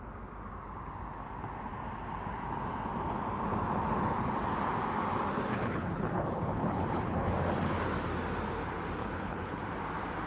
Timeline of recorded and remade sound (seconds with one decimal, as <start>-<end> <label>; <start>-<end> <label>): 0.0-5.5 recorded; 5.5-7.3 remade; 7.3-9.0 recorded; 9.0-9.6 remade; 9.6-10.3 recorded